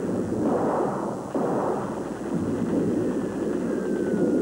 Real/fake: real